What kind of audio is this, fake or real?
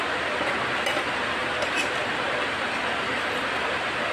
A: real